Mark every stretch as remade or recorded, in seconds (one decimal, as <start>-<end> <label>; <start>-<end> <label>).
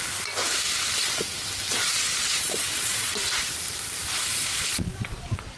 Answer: 0.0-1.7 recorded; 1.7-3.1 remade; 3.1-4.3 recorded; 4.3-5.6 remade